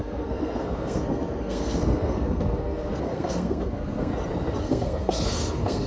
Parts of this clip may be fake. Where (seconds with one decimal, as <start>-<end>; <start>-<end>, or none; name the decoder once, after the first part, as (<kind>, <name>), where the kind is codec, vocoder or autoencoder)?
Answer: 0.0-4.1 (codec, SNAC); 4.6-5.9